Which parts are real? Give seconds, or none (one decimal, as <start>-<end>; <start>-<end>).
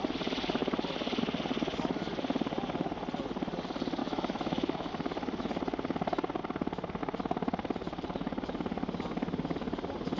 0.0-4.0; 4.9-10.2